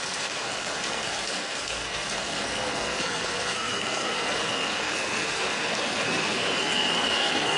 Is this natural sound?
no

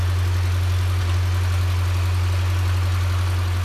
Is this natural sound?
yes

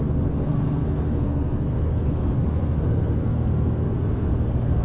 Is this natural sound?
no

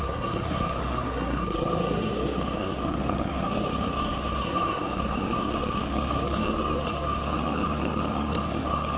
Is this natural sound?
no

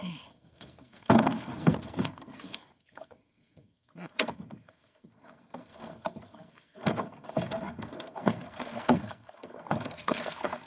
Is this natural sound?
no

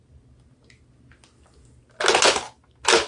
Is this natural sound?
yes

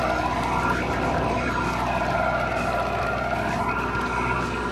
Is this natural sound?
yes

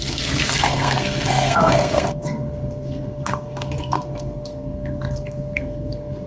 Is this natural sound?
no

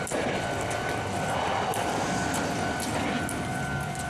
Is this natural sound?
yes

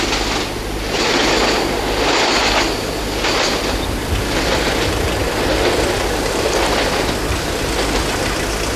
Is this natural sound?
yes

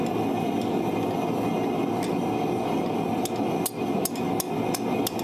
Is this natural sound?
yes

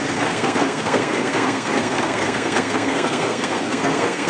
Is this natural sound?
no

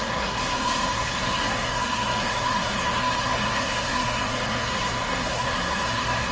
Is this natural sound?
no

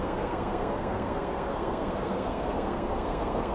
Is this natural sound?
no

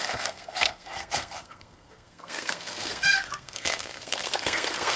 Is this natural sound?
no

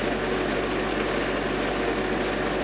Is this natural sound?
yes